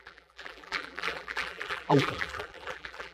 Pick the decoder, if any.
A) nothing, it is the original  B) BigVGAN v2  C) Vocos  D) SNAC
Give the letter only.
B